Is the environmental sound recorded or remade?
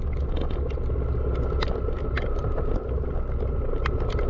recorded